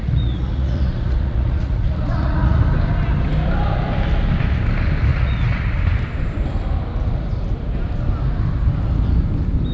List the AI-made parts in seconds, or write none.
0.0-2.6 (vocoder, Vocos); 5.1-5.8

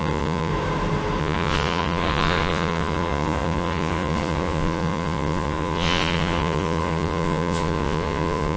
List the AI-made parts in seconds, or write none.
0.0-0.5 (vocoder, Vocos); 1.2-8.6

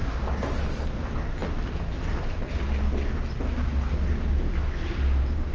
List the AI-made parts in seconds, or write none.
none

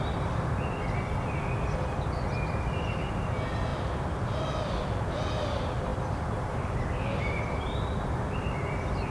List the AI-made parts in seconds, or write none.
none

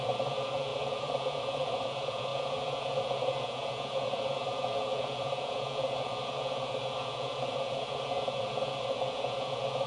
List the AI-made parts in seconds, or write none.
0.0-9.9 (vocoder, Vocos)